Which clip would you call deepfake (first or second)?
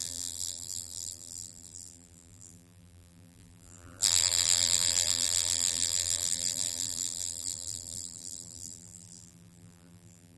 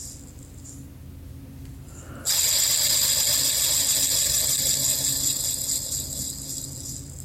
first